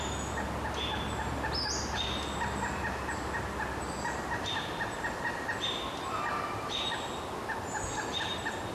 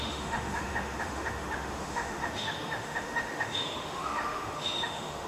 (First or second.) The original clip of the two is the first